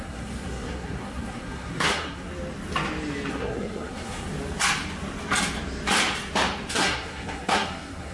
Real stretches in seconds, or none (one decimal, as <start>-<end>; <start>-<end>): 2.3-3.3; 4.3-6.7